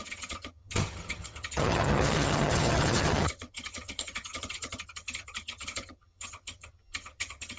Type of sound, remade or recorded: remade